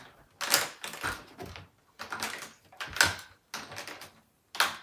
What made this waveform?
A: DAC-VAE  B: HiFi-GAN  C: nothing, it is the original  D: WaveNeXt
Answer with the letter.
C